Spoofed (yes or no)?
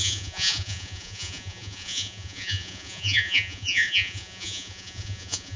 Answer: yes